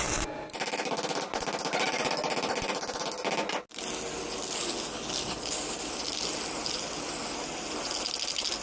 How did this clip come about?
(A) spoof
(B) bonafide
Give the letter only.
B